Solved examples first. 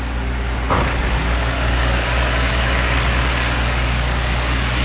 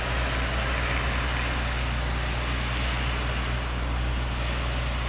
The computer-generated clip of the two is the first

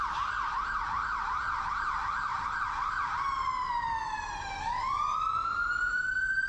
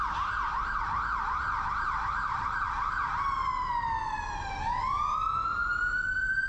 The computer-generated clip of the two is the first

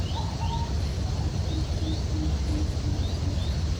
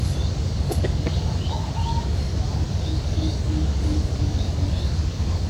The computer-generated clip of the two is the second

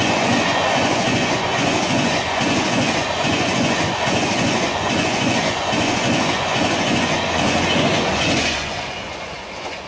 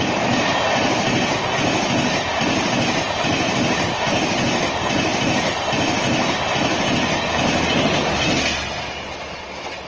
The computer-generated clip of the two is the first